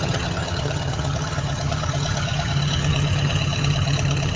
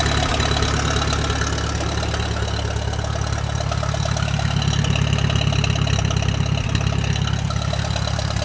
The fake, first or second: first